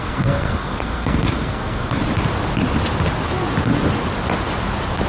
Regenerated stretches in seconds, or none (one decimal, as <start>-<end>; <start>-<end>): 0.0-2.0